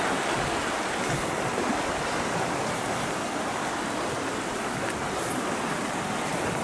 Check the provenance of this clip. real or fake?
real